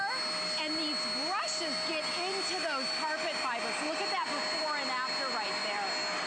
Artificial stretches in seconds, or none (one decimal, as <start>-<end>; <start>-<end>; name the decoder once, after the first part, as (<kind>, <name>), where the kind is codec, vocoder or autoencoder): none